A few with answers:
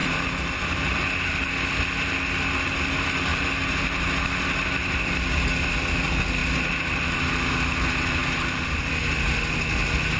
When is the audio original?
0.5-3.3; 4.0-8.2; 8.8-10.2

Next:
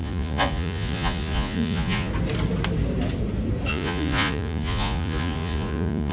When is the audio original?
2.1-3.7

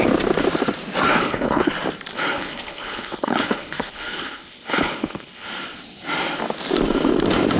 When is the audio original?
0.0-1.1; 1.7-2.1; 5.5-7.6